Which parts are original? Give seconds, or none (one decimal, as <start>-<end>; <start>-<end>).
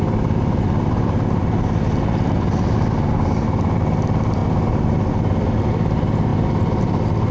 0.0-7.3